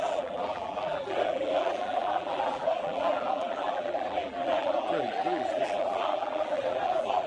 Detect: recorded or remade remade